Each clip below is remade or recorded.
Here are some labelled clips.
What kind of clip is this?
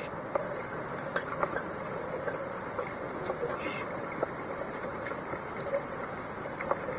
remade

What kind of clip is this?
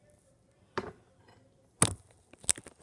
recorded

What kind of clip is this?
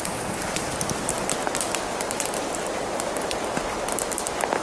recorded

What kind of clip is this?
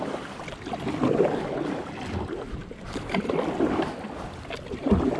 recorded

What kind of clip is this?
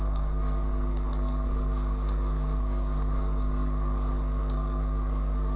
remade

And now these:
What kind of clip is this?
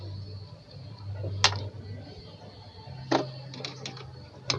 recorded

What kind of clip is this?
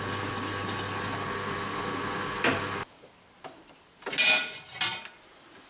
recorded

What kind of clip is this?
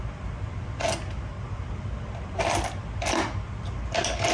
recorded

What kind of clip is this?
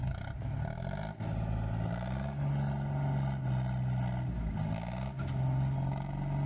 recorded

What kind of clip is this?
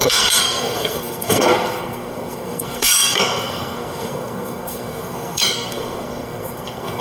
remade